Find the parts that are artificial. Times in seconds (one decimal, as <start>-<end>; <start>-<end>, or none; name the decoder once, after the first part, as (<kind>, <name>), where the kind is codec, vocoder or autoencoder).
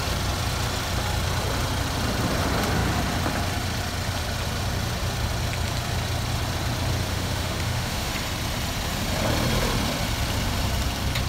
7.1-8.1 (autoencoder, DAC-VAE)